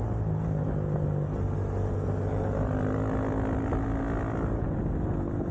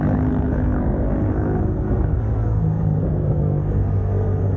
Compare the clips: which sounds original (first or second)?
first